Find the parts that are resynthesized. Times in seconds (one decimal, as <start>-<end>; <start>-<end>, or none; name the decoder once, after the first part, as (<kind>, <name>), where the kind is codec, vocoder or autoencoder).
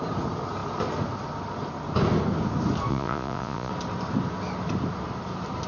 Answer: 2.9-3.7 (vocoder, Vocos)